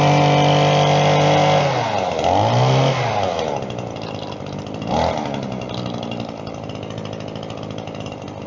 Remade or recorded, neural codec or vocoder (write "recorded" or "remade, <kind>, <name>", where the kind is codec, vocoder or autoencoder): recorded